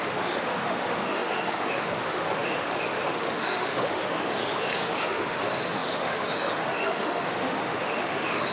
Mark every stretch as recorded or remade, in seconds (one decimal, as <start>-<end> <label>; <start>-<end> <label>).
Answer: 0.0-8.5 remade